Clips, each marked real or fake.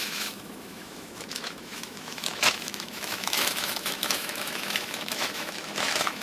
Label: fake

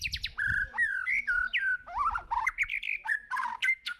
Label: real